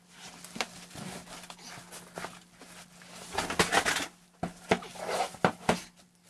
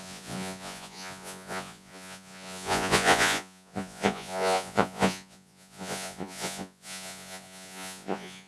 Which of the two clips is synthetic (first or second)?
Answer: second